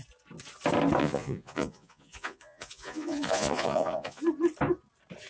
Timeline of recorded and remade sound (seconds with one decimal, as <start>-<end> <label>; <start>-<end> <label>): 0.0-1.0 recorded; 1.0-4.2 remade; 4.2-5.3 recorded